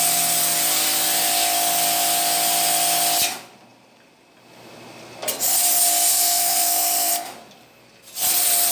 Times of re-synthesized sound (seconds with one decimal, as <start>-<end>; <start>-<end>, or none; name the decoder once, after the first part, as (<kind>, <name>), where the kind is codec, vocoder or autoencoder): 6.1-7.1 (codec, SNAC)